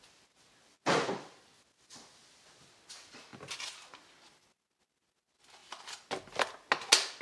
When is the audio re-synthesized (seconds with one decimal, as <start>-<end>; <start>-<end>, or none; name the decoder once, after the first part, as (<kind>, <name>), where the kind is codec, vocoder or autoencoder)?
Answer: none